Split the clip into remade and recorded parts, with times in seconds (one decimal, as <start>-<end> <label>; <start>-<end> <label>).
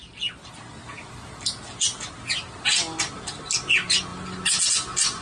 0.0-5.2 recorded